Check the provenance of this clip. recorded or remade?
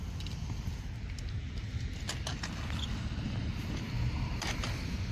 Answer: recorded